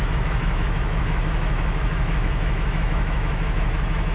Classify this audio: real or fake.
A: fake